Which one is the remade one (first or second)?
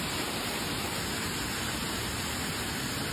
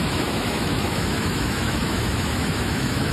second